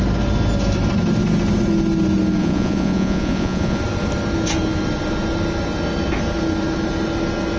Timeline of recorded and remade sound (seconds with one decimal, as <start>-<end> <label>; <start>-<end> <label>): 0.0-2.4 recorded; 2.4-3.8 remade; 3.8-7.6 recorded